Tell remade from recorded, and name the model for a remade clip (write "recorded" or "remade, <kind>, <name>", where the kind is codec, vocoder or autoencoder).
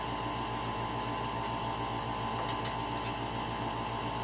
recorded